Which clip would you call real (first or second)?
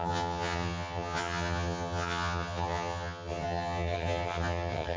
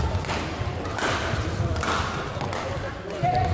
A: second